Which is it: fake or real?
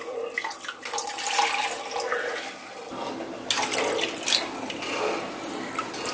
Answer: real